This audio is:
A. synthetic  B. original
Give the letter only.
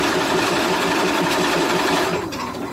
A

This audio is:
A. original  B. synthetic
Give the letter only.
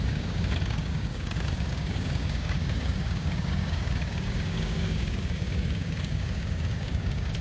B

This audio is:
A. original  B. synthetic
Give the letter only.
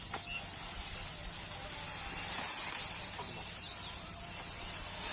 A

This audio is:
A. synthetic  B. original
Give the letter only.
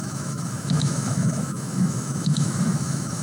A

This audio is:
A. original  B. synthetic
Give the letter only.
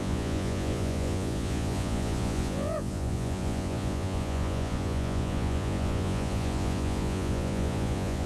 B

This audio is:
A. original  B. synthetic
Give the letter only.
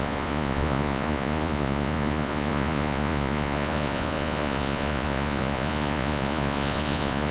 B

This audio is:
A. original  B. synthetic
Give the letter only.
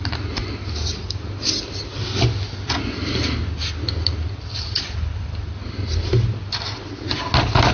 A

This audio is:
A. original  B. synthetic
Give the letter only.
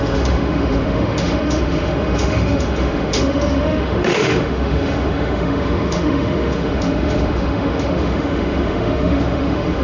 B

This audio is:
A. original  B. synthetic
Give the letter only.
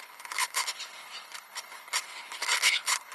B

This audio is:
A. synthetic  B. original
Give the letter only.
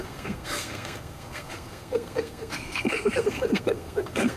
A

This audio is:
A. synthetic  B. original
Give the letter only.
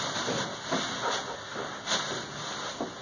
B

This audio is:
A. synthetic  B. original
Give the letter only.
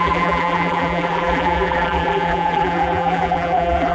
A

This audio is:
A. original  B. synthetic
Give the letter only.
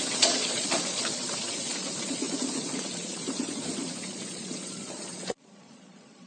B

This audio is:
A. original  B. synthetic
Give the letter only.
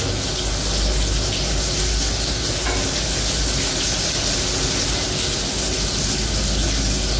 A